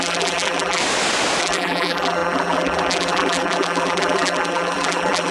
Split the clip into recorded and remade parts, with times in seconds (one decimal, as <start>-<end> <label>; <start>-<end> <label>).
0.0-0.8 remade; 0.8-1.4 recorded; 1.4-5.3 remade